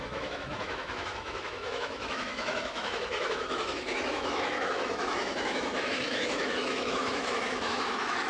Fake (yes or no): yes